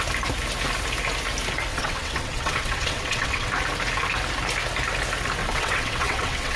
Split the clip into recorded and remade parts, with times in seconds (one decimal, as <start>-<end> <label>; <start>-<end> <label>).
0.0-1.7 recorded; 1.7-3.5 remade; 3.5-5.4 recorded; 5.4-6.6 remade